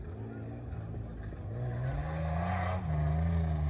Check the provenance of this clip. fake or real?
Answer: real